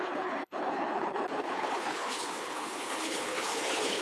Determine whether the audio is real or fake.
fake